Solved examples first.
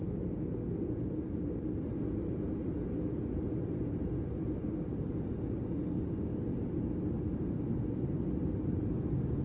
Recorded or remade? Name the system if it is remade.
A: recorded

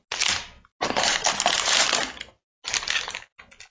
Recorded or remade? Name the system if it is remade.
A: recorded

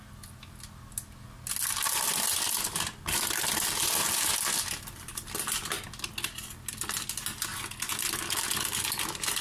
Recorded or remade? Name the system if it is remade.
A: recorded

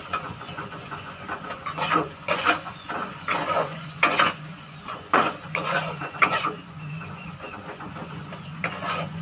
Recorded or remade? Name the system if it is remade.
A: remade, vocoder, Vocos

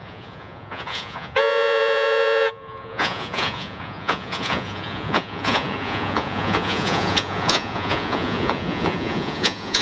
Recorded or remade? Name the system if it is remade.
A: remade, vocoder, Vocos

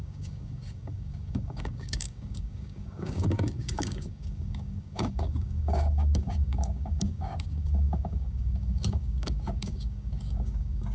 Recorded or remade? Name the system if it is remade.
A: remade, codec, DAC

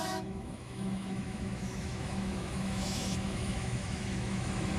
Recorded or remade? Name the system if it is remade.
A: remade, autoencoder, DAC-VAE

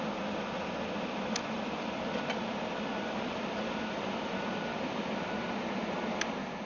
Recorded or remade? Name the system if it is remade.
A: recorded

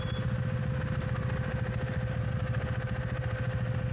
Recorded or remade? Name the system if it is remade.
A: recorded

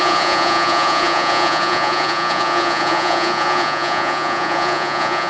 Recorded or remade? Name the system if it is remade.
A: remade, vocoder, Vocos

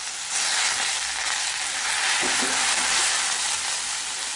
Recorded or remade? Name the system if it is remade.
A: recorded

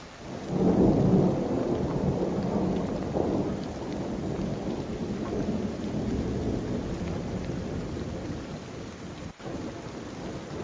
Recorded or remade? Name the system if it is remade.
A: recorded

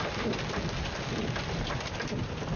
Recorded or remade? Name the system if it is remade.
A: recorded